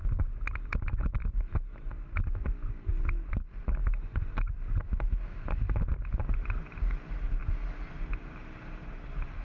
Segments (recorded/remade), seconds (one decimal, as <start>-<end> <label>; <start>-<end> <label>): 0.0-9.4 recorded